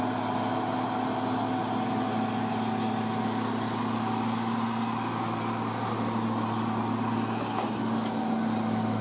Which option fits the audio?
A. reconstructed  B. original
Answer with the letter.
B